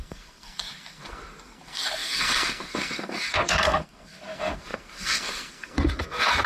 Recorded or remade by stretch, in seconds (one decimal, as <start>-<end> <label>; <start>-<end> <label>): 0.0-6.5 remade